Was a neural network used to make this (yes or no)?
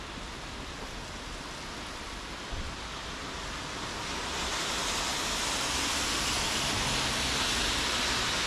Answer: no